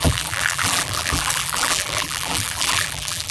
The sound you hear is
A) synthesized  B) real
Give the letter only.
A